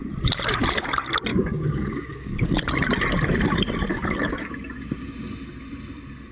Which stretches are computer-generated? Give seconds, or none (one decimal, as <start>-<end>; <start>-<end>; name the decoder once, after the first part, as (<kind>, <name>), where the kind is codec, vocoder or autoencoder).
1.3-2.6 (codec, DAC); 3.9-4.5